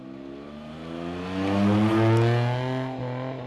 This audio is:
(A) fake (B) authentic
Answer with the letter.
B